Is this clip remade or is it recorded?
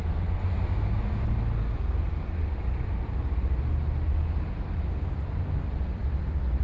recorded